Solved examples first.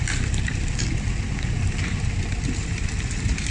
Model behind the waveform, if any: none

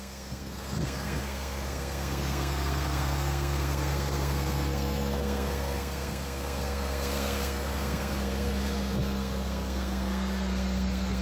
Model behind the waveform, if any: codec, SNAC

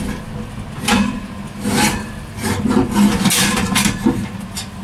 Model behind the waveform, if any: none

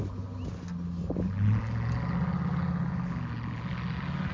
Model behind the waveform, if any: none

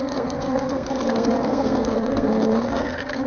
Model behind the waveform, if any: codec, SNAC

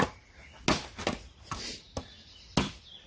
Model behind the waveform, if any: none